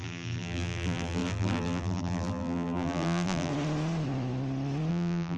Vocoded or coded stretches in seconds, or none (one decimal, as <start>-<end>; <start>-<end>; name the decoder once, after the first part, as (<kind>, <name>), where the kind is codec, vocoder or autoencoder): 0.0-3.5 (vocoder, BigVGAN v2); 4.9-5.4